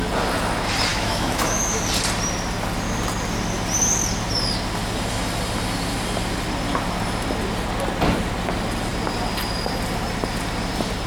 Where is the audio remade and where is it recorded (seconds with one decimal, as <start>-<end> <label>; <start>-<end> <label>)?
0.0-0.9 recorded; 0.9-1.8 remade; 1.8-11.1 recorded